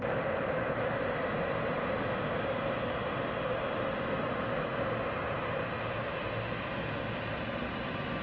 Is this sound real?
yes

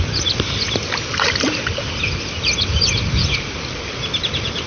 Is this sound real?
yes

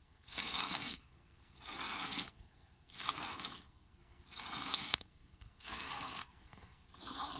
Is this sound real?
no